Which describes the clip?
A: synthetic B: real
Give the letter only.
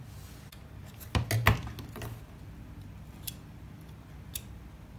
B